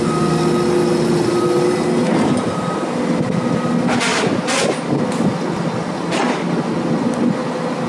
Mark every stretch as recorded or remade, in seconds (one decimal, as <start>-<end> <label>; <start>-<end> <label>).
0.0-7.9 recorded